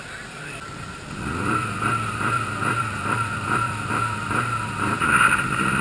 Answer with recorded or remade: remade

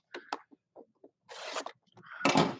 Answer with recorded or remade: recorded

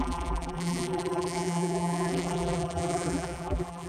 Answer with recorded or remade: remade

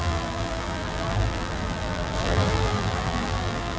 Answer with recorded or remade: remade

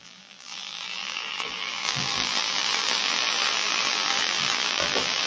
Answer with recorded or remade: remade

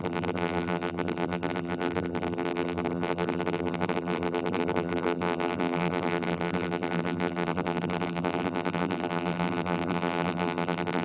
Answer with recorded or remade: remade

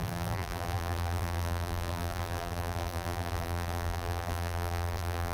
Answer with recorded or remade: remade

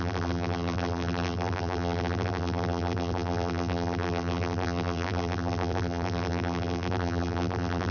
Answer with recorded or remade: remade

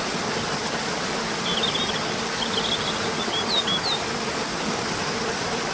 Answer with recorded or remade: recorded